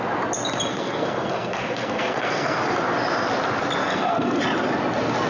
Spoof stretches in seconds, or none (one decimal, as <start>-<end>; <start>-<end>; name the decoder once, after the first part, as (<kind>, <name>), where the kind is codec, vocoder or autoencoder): 0.7-2.6 (codec, SNAC); 3.8-4.4